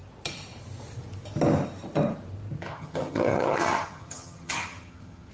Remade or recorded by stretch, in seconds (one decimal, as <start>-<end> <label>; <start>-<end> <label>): 0.0-2.6 recorded; 2.6-5.3 remade

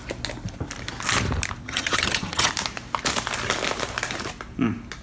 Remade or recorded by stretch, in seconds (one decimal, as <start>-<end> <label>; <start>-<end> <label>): 0.0-1.6 recorded; 1.6-2.5 remade; 2.5-5.0 recorded